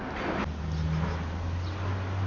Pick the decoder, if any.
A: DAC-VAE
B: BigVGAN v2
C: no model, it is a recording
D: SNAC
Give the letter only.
C